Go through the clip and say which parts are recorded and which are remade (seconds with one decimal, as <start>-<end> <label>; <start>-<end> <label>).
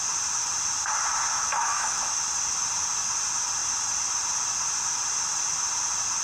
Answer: 0.0-1.3 recorded; 1.3-2.2 remade; 2.2-6.2 recorded